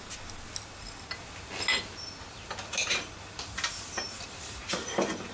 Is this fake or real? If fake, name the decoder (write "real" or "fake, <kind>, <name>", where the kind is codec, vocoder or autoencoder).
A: real